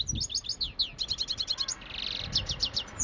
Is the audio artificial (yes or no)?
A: no